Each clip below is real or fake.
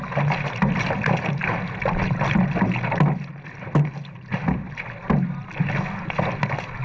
real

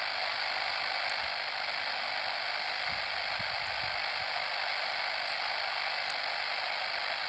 real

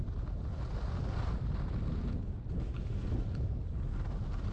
real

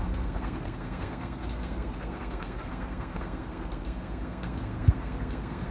fake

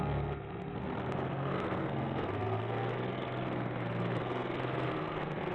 fake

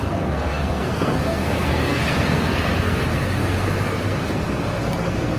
fake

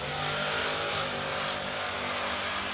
real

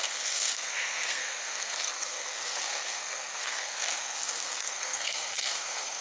fake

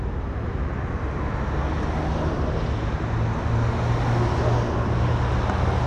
real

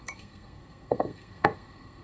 fake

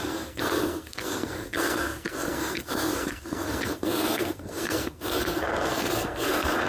fake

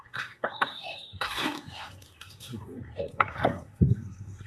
fake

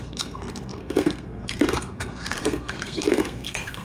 fake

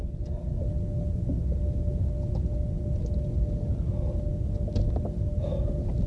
real